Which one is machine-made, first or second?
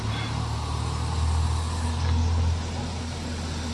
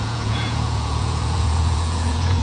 second